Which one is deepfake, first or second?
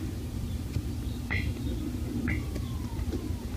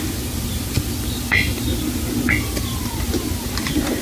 first